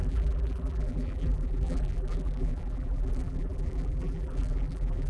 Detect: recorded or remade remade